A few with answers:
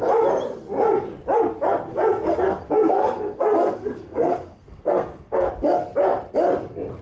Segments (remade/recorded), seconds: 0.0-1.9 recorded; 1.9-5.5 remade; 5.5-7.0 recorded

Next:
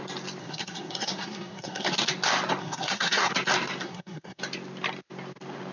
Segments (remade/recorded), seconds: 0.0-0.4 recorded; 0.4-1.9 remade; 1.9-2.6 recorded; 2.6-3.3 remade; 3.3-3.8 recorded; 3.8-4.4 remade; 4.4-5.7 recorded